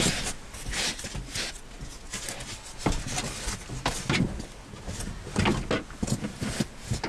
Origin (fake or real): real